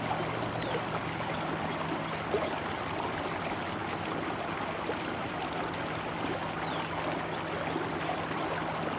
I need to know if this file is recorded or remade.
recorded